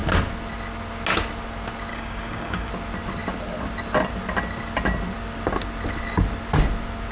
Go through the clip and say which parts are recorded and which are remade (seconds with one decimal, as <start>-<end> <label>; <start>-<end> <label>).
0.0-1.9 recorded; 1.9-2.7 remade; 2.7-7.1 recorded